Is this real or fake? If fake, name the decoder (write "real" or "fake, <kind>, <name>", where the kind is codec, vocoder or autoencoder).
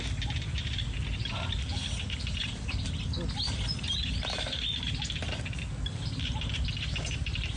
real